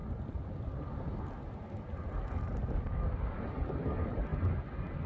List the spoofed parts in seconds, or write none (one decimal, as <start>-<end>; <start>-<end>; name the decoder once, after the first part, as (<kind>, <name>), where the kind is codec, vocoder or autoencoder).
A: none